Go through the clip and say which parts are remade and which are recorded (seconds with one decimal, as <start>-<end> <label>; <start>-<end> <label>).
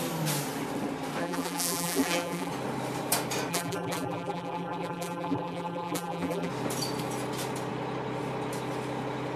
0.0-1.2 recorded; 1.2-2.5 remade; 2.5-3.5 recorded; 3.5-6.5 remade; 6.5-9.4 recorded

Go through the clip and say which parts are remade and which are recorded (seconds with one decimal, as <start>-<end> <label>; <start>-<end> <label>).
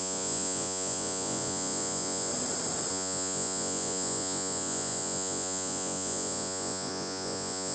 0.0-2.3 remade; 2.3-2.9 recorded; 2.9-7.7 remade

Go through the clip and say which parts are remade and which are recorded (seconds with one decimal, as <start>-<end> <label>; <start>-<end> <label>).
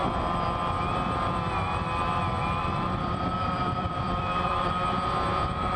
0.0-2.6 recorded; 2.6-4.7 remade; 4.7-5.8 recorded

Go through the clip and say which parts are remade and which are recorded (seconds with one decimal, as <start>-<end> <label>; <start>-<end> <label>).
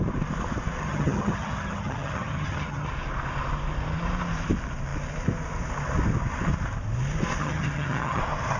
0.0-0.8 recorded; 0.8-2.9 remade; 2.9-7.4 recorded; 7.4-8.2 remade; 8.2-8.6 recorded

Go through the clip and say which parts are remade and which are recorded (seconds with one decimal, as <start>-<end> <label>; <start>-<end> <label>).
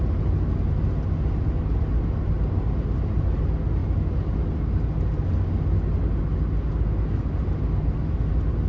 0.0-8.7 recorded